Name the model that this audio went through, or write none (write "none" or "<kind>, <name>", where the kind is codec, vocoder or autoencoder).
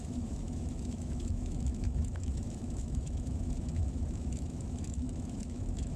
autoencoder, DAC-VAE